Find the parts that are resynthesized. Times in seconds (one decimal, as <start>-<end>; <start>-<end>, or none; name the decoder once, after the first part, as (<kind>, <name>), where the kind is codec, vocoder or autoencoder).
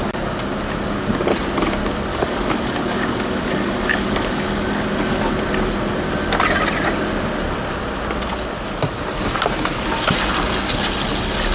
2.1-5.3 (codec, DAC)